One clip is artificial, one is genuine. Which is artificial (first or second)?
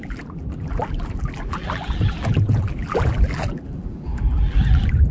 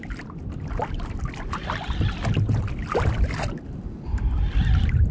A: first